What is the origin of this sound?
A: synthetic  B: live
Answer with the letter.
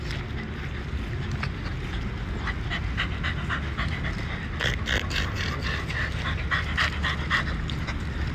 B